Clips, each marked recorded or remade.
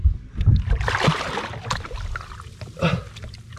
recorded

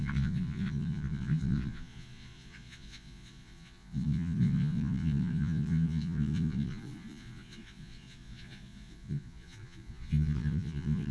remade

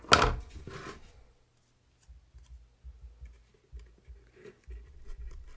recorded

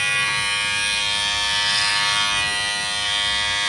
recorded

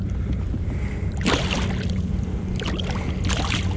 recorded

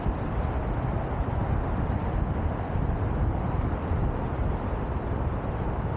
recorded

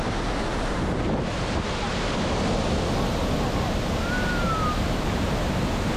recorded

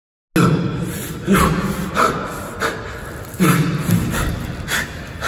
recorded